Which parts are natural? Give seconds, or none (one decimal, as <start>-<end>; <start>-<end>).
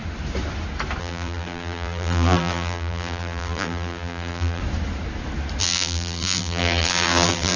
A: 0.0-1.0; 4.6-5.6